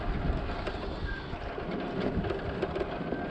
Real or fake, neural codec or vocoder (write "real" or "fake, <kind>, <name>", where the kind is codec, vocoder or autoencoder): real